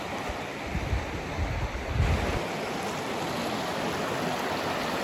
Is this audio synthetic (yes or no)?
no